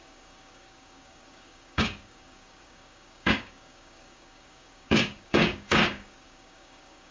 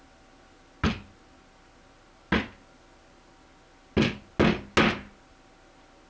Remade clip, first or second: first